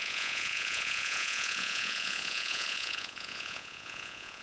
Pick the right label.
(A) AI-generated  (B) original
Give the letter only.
A